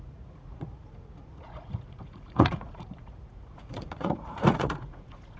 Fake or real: fake